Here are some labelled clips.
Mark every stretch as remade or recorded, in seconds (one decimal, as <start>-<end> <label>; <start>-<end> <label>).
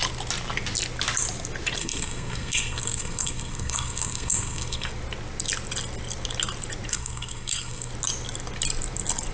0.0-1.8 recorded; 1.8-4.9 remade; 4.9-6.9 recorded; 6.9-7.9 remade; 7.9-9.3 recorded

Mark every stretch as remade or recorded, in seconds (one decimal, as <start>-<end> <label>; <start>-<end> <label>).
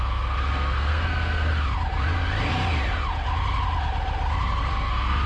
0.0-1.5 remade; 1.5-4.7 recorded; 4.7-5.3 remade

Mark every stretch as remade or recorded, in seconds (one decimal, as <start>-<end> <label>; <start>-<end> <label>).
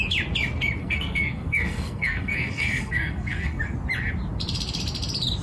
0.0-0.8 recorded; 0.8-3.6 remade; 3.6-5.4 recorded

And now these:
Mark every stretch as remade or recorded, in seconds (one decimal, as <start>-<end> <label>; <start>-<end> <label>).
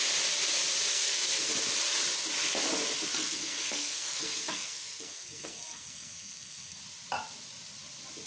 0.0-0.9 recorded; 0.9-1.5 remade; 1.5-3.2 recorded; 3.2-6.8 remade; 6.8-8.3 recorded